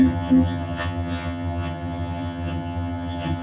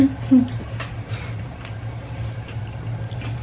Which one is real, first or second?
second